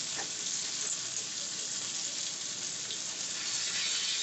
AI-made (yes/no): no